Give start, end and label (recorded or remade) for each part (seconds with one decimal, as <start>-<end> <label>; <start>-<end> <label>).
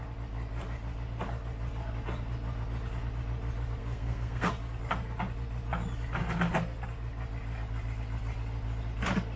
0.0-3.8 recorded; 3.8-4.5 remade; 4.5-9.4 recorded